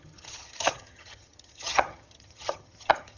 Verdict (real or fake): fake